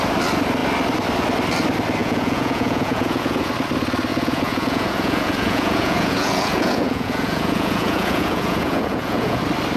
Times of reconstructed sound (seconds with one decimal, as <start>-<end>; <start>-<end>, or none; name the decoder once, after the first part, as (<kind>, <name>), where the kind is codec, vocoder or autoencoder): 2.0-3.5 (vocoder, Vocos); 4.1-9.4